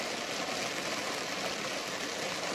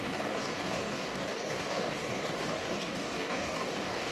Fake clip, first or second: second